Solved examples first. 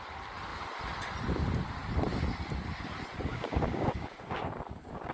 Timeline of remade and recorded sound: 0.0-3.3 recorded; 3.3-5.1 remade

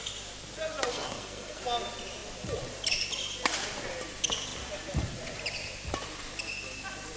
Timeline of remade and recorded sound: 0.0-0.9 recorded; 0.9-1.6 remade; 1.6-7.2 recorded

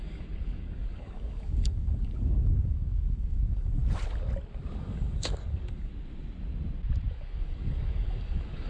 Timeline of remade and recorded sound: 0.0-3.8 remade; 3.8-4.8 recorded; 4.8-5.9 remade; 5.9-7.1 recorded; 7.1-8.7 remade

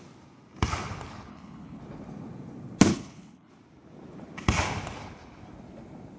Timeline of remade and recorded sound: 0.0-1.3 recorded; 1.3-1.8 remade; 1.8-2.9 recorded; 2.9-3.5 remade; 3.5-6.2 recorded

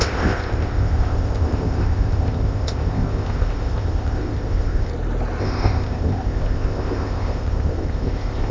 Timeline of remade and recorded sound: 0.0-4.9 remade; 4.9-5.4 recorded; 5.4-8.5 remade

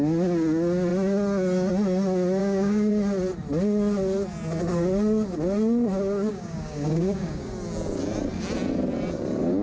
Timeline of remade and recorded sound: 0.0-2.4 recorded; 2.4-2.9 remade; 2.9-6.3 recorded; 6.3-7.5 remade; 7.5-9.6 recorded